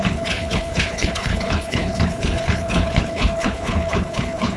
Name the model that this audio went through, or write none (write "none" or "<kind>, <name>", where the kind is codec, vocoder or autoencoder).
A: codec, HILCodec